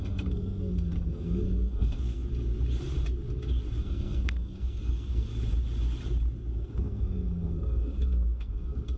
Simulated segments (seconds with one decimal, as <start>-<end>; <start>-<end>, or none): 0.0-2.2; 3.8-5.3; 6.5-9.0